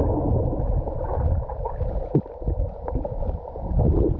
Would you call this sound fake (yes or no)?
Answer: no